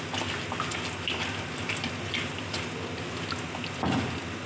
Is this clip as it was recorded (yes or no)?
yes